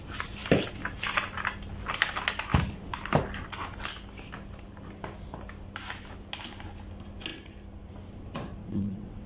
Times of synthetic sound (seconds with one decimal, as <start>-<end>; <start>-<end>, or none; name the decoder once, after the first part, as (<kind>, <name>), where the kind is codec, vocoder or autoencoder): 8.6-9.3 (vocoder, WaveNeXt)